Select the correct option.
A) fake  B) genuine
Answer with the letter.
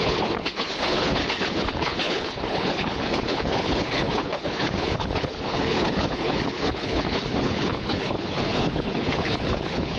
A